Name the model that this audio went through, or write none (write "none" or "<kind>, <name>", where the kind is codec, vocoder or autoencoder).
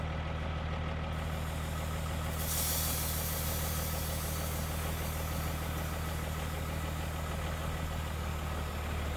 none